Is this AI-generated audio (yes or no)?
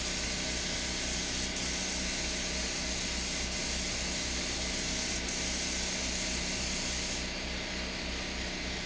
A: no